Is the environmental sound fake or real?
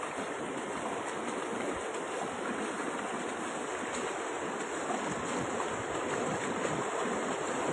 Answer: real